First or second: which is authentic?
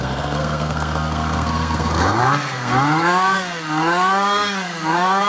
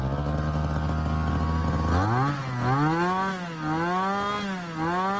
second